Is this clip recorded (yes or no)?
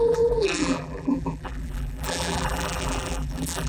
no